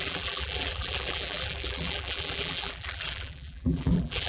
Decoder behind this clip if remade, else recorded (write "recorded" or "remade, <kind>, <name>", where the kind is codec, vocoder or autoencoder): remade, vocoder, BigVGAN v2